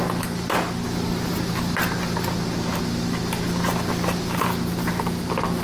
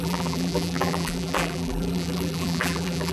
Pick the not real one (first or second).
second